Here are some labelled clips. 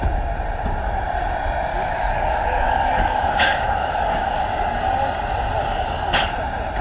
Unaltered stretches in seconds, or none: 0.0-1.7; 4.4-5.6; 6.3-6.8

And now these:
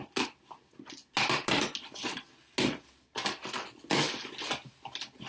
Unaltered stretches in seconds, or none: 0.0-5.3

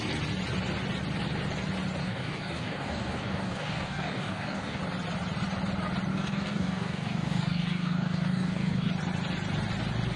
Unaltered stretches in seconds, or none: 0.0-2.0; 4.8-6.1; 8.9-10.2

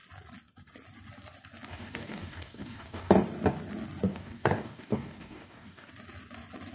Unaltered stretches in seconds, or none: 0.0-1.7; 3.1-4.1; 5.9-6.7

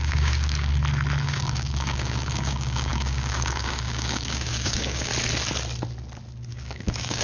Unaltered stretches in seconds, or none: 0.7-1.2; 5.1-6.5

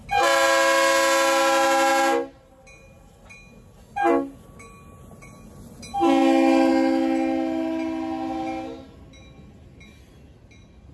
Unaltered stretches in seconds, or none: 0.0-10.9

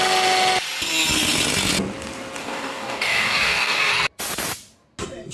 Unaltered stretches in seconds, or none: 0.0-2.4; 3.9-5.3